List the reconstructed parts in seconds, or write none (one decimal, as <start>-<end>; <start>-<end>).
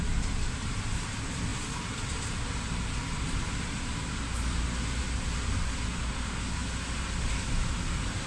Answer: none